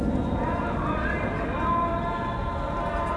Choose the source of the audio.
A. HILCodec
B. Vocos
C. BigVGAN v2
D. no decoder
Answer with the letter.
D